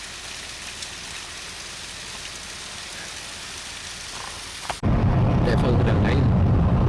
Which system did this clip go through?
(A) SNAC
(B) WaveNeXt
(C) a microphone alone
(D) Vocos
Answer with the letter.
C